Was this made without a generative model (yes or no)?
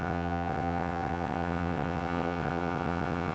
no